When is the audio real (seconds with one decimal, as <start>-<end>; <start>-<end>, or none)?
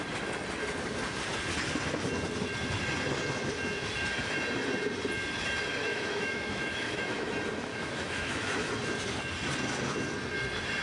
0.0-5.8; 7.3-7.7; 8.7-10.8